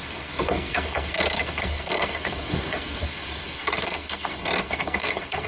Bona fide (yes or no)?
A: no